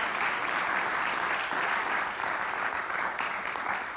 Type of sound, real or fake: real